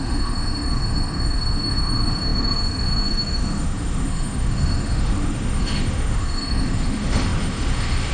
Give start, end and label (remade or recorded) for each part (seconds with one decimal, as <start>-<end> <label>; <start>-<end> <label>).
0.0-8.1 remade